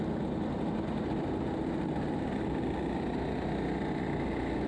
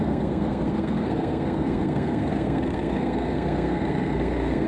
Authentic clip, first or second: first